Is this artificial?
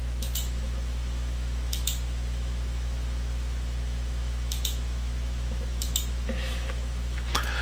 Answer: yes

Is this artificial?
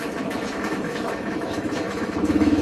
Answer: yes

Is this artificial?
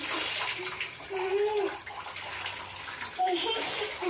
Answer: no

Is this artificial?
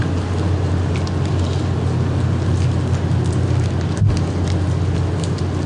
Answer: no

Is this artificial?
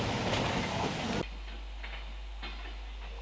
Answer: no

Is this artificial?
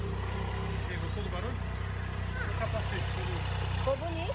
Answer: no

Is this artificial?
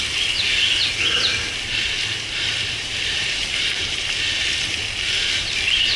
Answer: no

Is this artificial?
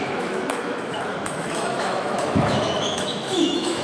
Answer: yes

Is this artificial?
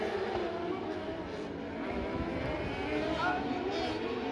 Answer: no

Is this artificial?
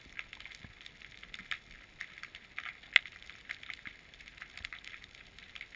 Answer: no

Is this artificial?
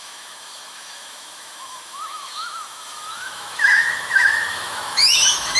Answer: yes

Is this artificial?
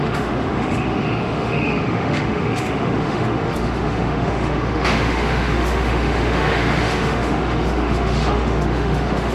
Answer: yes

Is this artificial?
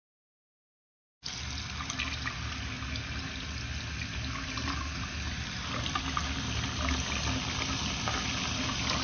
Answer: no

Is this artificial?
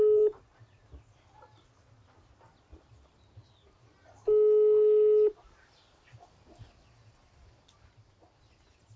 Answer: no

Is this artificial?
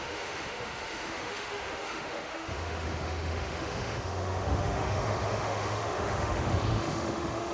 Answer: yes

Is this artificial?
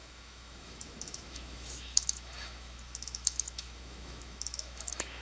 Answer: yes